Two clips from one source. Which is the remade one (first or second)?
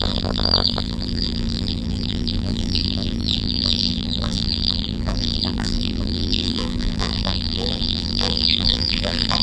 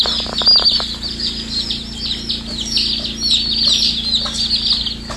first